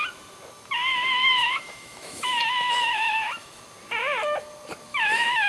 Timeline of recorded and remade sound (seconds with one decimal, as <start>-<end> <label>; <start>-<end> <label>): 0.0-0.9 recorded; 0.9-3.6 remade; 3.6-4.9 recorded; 4.9-5.5 remade